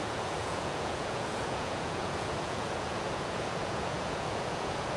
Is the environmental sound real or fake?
fake